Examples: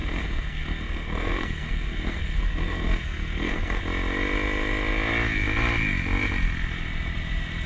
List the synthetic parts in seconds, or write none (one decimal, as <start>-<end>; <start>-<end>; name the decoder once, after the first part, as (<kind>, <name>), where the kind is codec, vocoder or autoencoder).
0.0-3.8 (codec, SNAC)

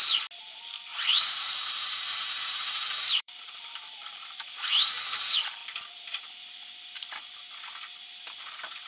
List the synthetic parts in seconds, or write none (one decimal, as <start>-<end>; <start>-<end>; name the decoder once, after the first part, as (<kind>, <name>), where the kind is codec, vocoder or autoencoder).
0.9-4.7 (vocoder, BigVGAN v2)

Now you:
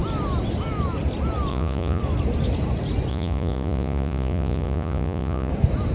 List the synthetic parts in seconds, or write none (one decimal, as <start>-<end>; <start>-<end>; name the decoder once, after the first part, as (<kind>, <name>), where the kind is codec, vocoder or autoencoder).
1.5-2.0 (vocoder, Vocos); 3.1-5.5